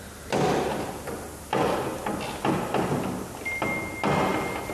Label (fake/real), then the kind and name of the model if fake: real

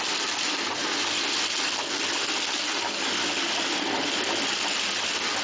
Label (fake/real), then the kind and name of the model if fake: real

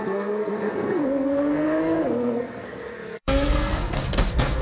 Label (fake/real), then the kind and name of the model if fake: fake, codec, SNAC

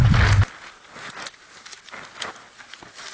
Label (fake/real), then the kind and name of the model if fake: real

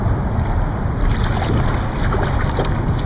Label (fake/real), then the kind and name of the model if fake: real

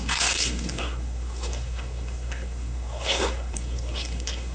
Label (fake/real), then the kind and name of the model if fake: fake, codec, SNAC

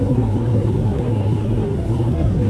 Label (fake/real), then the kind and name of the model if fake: fake, codec, SNAC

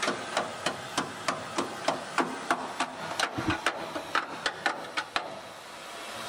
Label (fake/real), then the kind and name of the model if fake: real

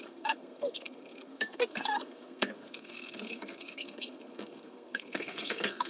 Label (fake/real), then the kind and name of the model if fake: fake, codec, SNAC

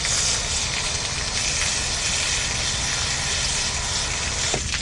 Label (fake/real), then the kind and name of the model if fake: real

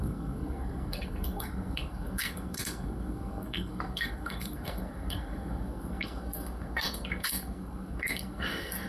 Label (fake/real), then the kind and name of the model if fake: fake, codec, SNAC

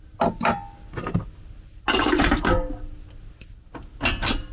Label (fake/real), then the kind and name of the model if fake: real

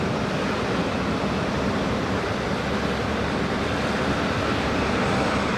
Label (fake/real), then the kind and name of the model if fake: real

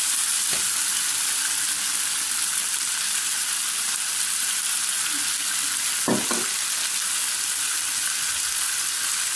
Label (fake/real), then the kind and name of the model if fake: real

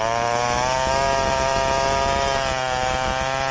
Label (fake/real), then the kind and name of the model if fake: real